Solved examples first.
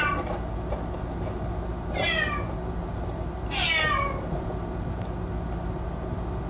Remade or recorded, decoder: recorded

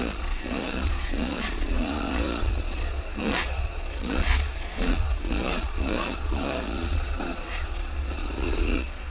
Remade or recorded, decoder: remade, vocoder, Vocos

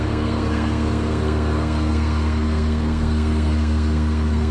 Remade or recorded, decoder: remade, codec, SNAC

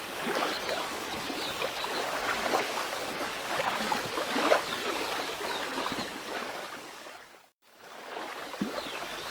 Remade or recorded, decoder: remade, codec, DAC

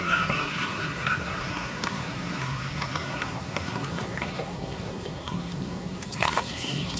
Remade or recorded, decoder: remade, codec, SNAC